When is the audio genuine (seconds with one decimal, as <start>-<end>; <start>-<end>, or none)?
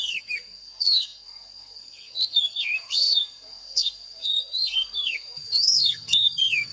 none